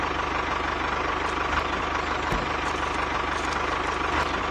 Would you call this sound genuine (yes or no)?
yes